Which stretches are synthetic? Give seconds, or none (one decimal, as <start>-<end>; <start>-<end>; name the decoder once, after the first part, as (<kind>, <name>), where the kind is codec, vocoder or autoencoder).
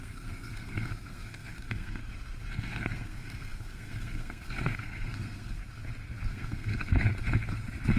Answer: 0.0-2.0 (codec, SNAC); 2.5-5.6; 6.3-7.1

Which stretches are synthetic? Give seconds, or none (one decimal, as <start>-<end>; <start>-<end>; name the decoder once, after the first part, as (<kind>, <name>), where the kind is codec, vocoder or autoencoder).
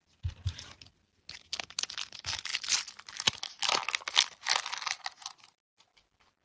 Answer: none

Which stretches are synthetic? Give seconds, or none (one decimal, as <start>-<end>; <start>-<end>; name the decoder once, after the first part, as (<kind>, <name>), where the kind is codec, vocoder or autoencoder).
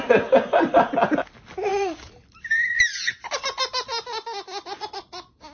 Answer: 1.7-3.3 (vocoder, BigVGAN v2)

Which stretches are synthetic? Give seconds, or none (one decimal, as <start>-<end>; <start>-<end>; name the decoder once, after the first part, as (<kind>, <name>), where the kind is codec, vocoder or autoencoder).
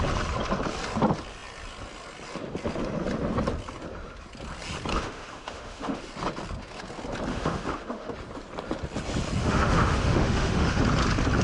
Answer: 4.9-6.0 (autoencoder, DAC-VAE); 7.3-8.1; 9.4-10.8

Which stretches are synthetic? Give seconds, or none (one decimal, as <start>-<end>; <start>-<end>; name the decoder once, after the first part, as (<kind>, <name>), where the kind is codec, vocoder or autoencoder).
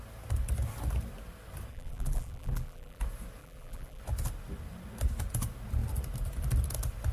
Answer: 1.7-3.0 (vocoder, BigVGAN v2); 3.4-4.0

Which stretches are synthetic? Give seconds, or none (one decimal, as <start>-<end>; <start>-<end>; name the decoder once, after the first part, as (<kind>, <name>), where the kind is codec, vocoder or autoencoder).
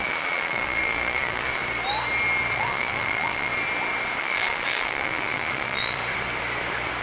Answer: 0.0-1.6 (vocoder, Vocos); 2.5-3.5; 4.2-6.0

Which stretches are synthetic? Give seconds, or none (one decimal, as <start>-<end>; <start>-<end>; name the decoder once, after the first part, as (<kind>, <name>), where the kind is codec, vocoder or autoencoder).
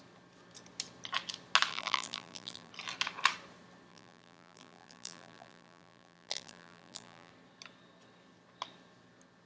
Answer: 1.7-2.7 (vocoder, BigVGAN v2); 3.9-7.3